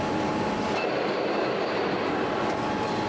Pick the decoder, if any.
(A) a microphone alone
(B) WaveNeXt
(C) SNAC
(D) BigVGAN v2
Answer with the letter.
A